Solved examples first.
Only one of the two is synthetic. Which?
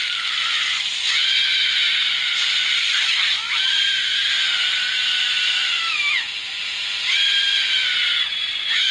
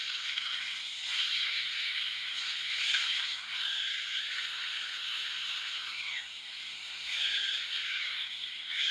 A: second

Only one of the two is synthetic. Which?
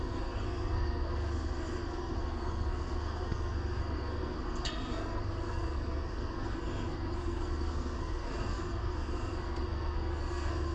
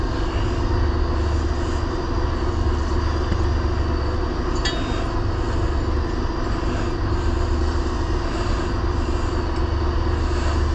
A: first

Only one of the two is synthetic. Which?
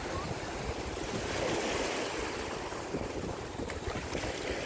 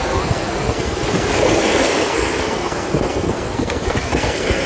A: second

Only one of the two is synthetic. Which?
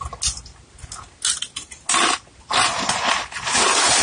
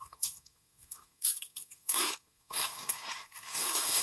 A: second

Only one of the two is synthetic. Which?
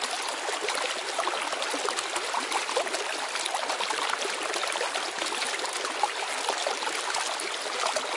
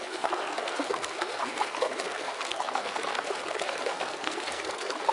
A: second